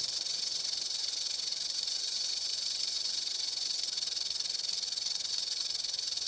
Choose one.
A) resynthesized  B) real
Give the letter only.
A